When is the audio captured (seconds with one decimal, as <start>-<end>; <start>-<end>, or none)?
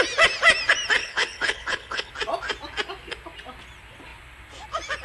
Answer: 0.0-1.0; 2.1-5.0